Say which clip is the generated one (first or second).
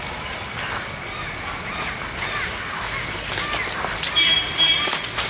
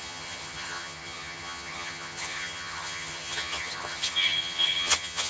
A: second